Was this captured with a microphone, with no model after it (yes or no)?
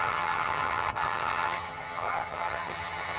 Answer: no